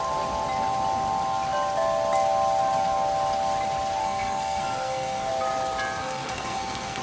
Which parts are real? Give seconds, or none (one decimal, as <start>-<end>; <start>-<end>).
0.0-4.0; 5.3-6.0